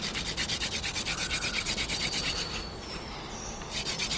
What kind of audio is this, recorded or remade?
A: remade